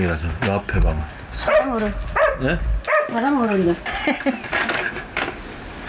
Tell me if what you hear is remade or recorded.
recorded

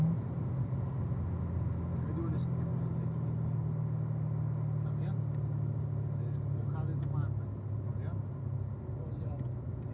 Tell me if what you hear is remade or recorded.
recorded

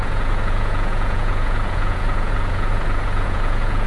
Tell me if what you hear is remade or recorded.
remade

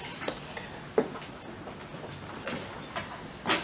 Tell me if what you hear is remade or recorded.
recorded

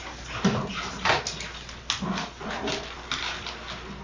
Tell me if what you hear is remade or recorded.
recorded